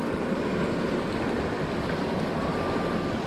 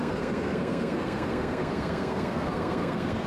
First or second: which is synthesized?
second